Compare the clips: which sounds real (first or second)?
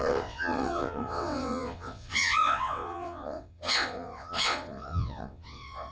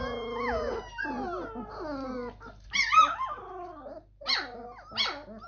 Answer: second